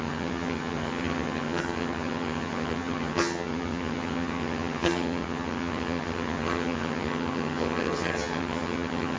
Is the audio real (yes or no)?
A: no